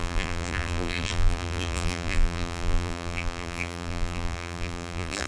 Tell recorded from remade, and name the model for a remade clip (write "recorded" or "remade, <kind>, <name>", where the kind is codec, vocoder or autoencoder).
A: remade, vocoder, BigVGAN v2